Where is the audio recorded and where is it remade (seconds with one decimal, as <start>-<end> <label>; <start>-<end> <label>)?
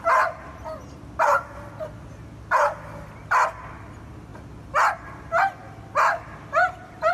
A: 0.0-7.1 recorded